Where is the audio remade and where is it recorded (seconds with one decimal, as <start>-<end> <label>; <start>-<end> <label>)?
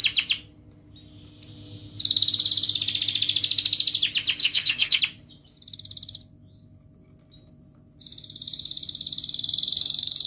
0.0-4.4 recorded; 4.4-5.0 remade; 5.0-10.3 recorded